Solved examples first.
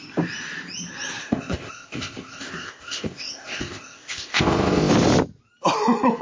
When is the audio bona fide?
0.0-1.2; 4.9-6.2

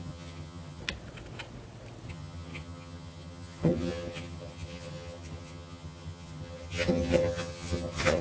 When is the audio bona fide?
0.8-2.1

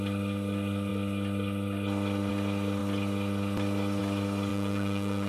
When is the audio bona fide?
0.0-4.5

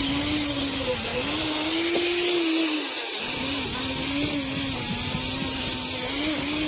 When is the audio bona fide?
0.0-6.7